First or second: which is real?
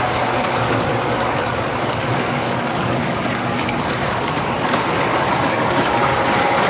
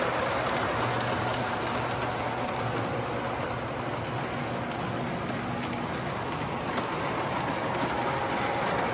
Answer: second